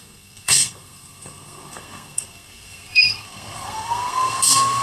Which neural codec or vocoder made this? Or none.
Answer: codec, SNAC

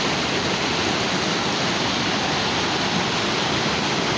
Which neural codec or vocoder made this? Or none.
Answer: none